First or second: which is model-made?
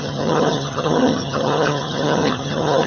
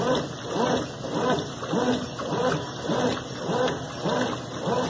first